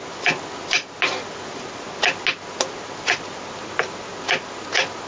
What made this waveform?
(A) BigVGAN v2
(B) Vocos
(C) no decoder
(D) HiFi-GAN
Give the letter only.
C